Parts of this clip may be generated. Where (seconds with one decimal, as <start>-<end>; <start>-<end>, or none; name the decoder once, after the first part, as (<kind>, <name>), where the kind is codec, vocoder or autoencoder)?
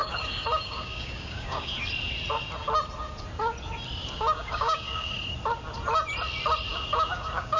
0.0-1.7 (codec, DAC); 4.0-5.1; 6.7-7.6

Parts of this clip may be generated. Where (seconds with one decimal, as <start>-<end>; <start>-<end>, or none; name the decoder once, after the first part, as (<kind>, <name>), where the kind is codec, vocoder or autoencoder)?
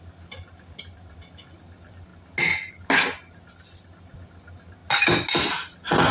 none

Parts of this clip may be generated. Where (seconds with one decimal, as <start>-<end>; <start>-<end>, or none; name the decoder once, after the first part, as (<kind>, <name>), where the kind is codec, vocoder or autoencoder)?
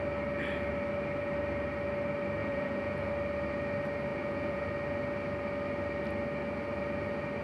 2.4-3.1 (vocoder, Vocos); 4.1-4.7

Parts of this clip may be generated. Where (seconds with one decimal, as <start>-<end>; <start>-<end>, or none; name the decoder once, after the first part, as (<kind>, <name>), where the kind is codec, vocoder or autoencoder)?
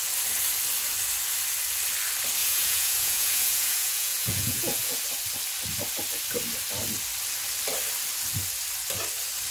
2.4-5.0 (vocoder, Vocos)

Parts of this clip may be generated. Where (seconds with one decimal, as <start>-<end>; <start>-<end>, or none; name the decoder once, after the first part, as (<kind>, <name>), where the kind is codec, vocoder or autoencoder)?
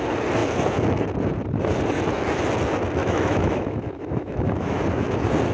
3.0-4.8 (autoencoder, DAC-VAE)